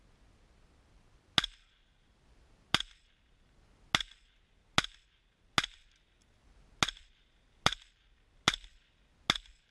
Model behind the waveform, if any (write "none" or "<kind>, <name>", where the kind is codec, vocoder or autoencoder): none